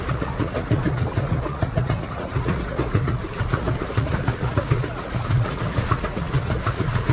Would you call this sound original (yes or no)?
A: no